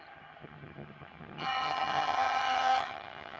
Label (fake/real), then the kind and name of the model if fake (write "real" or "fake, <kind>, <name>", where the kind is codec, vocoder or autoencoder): fake, vocoder, HiFi-GAN